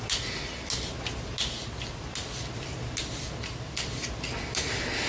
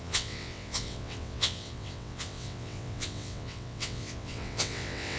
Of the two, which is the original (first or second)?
first